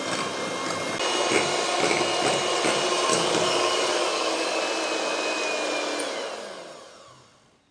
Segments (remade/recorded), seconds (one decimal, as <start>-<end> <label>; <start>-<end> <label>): 0.0-3.1 recorded; 3.1-4.6 remade; 4.6-7.7 recorded